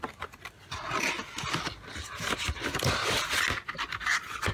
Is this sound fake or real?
real